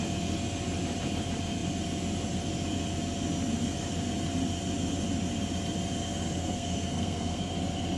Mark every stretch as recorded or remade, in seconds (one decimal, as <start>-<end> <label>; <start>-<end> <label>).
0.0-6.4 recorded; 6.4-7.5 remade; 7.5-8.0 recorded